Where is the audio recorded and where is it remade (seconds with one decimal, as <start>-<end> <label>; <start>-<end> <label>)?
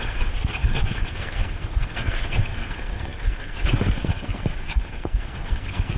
0.0-6.0 remade